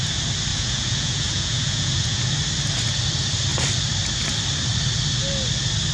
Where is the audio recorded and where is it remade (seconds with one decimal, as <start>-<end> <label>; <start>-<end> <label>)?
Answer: 0.0-0.5 recorded; 0.5-2.2 remade; 2.2-5.9 recorded